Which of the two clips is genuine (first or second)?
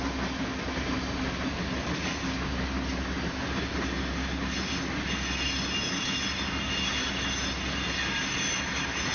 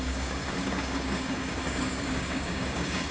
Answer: first